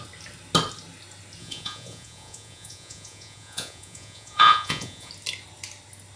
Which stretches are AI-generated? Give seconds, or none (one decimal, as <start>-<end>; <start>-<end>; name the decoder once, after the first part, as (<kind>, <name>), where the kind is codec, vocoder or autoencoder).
1.4-5.1 (vocoder, Vocos)